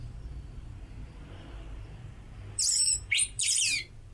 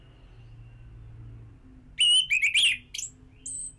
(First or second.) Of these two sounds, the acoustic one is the second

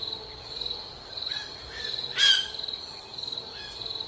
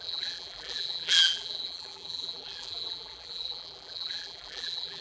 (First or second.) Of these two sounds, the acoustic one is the first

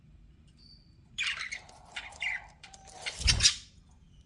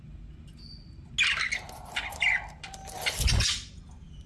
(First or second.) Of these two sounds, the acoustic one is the second